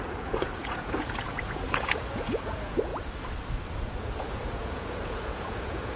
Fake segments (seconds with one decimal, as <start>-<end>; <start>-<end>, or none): 0.0-2.9; 3.8-6.0